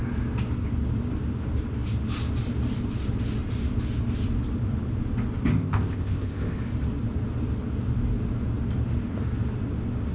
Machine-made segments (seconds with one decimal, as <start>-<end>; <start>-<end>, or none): 5.5-6.6